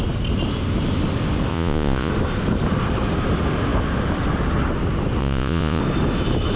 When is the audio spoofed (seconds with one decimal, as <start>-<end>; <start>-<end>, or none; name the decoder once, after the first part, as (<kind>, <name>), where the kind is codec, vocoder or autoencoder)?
1.5-2.1 (vocoder, Vocos); 5.2-5.8